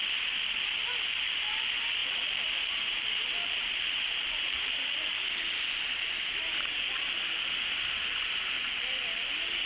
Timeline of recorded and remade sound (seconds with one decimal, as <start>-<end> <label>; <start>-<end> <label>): 0.0-2.0 recorded; 2.0-5.2 remade; 5.2-9.7 recorded

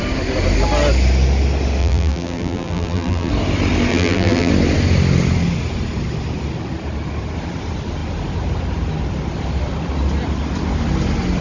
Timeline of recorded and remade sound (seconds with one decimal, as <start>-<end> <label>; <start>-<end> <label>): 0.0-1.8 recorded; 1.8-3.3 remade; 3.3-3.9 recorded; 3.9-4.5 remade; 4.5-11.4 recorded

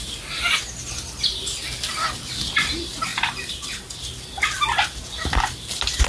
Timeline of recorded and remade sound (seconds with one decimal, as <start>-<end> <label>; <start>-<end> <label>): 0.0-3.1 recorded; 3.1-3.8 remade; 3.8-6.1 recorded

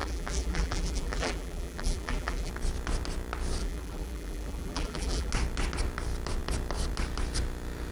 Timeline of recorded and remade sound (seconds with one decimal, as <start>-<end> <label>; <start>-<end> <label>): 0.0-2.5 remade; 2.5-3.6 recorded; 3.6-5.3 remade; 5.3-7.9 recorded

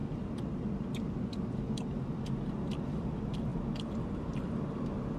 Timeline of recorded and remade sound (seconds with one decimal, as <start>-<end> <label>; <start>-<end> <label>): 0.0-5.2 remade

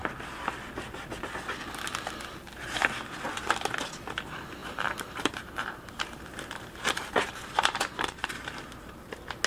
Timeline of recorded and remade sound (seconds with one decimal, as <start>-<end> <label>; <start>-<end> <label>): 0.0-4.6 recorded; 4.6-9.1 remade; 9.1-9.5 recorded

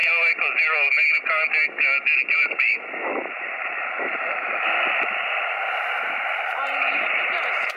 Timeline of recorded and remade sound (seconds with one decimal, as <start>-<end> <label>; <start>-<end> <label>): 0.0-2.3 recorded; 2.3-7.8 remade